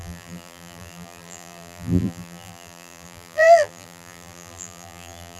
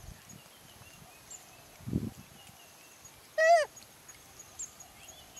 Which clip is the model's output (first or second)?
first